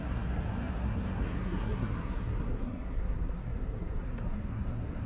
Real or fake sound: fake